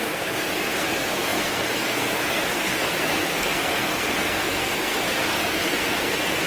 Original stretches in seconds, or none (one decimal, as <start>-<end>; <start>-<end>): none